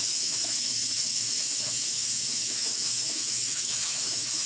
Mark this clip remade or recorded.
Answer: remade